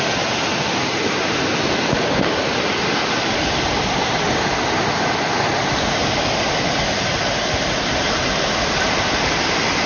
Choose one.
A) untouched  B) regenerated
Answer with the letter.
A